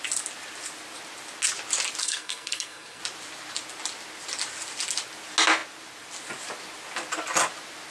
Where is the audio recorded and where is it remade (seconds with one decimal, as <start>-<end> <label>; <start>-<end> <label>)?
0.0-2.0 recorded; 2.0-3.0 remade; 3.0-7.9 recorded